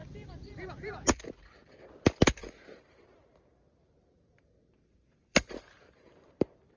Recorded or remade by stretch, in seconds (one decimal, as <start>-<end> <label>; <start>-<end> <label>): 0.0-0.9 remade; 0.9-2.4 recorded; 2.4-6.8 remade